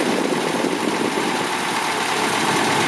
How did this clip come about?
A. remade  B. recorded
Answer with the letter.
B